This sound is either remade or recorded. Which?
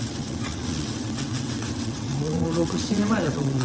remade